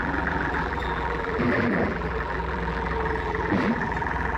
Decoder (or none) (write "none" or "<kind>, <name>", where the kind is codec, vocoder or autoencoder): vocoder, BigVGAN v2